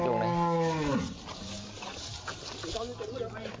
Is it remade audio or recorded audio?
recorded